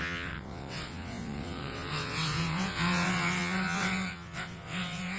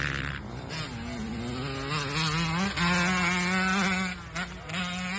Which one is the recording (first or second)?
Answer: second